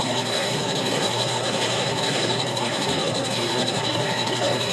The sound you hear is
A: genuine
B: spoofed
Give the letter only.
B